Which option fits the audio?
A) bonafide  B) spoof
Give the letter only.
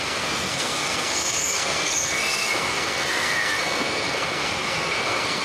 B